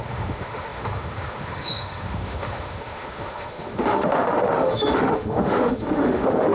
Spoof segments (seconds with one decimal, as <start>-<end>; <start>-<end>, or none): 0.0-6.5